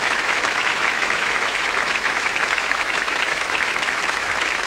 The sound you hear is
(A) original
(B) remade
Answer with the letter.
B